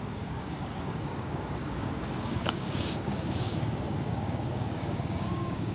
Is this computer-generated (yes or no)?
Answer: yes